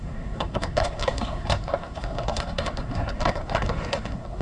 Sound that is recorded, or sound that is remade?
remade